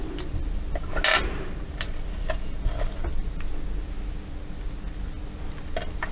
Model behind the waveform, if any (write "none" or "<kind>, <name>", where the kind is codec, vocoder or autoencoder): none